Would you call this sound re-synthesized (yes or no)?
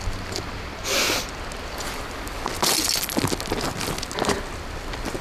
no